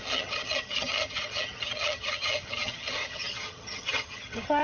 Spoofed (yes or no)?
yes